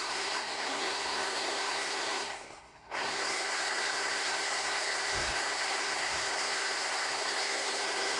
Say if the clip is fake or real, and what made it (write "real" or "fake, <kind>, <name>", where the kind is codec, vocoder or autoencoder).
fake, codec, SNAC